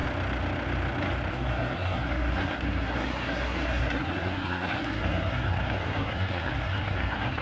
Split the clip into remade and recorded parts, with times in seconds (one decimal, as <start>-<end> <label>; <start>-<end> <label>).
0.0-1.3 recorded; 1.3-7.4 remade